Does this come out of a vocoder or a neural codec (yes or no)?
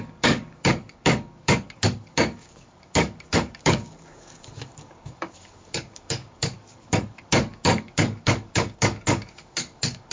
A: yes